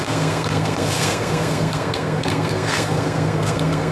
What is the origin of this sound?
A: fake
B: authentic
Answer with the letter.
A